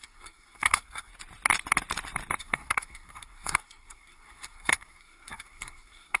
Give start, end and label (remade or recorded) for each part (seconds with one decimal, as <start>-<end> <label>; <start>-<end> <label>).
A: 0.0-1.1 remade; 1.1-2.4 recorded; 2.4-6.2 remade